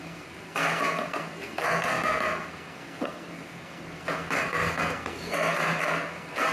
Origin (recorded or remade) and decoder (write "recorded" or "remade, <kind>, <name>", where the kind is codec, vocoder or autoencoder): remade, codec, SNAC